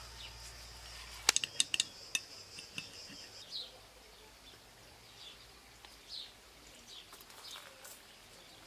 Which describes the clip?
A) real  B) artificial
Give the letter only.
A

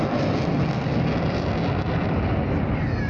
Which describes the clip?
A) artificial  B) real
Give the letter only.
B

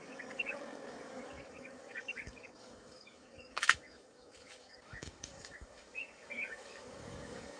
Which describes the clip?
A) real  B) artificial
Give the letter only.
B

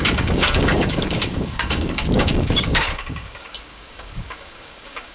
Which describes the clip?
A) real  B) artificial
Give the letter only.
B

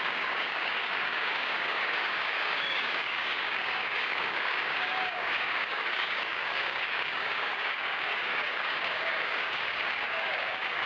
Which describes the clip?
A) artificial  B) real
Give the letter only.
A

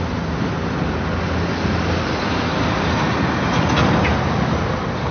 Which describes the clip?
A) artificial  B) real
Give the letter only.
B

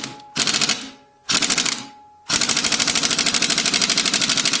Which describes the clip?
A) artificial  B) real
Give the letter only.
B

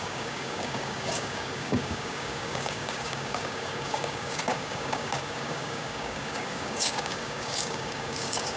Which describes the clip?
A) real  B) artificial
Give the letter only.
B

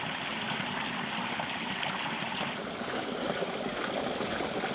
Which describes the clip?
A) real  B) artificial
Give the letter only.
A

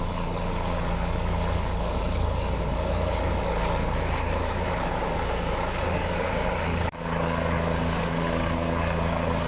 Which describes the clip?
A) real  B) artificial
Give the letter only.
B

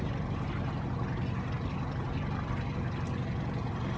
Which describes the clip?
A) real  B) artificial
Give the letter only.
A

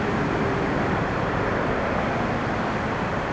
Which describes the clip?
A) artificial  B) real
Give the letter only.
B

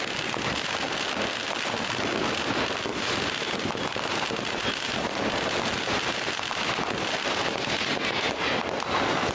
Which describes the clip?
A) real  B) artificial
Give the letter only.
A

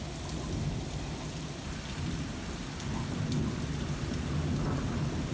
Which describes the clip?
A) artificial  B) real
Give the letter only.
B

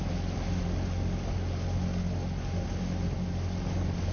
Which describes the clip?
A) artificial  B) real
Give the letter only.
B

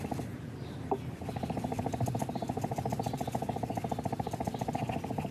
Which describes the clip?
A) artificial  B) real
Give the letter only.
B